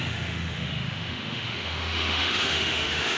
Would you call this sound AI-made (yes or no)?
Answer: yes